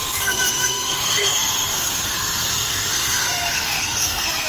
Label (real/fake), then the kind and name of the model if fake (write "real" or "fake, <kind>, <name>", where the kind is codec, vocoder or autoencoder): fake, codec, SNAC